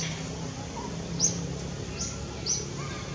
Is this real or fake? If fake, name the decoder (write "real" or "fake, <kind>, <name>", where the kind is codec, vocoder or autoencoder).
real